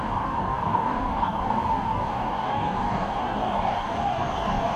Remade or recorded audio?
remade